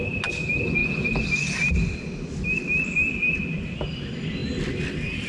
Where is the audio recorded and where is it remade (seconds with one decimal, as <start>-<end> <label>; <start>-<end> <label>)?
0.0-5.3 recorded